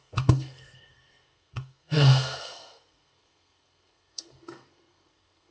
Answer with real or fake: fake